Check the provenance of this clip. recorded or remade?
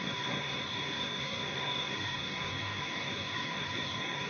remade